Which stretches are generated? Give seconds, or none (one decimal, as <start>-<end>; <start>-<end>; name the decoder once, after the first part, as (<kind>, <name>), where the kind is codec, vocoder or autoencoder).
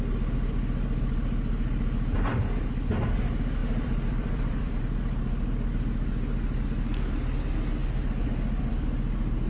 3.6-4.8 (vocoder, BigVGAN v2); 7.8-8.7